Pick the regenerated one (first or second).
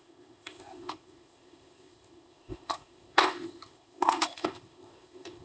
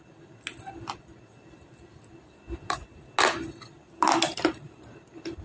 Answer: first